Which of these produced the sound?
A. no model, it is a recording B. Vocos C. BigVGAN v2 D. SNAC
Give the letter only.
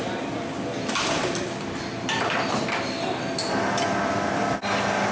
A